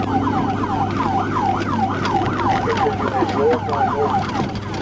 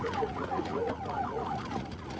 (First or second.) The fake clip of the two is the second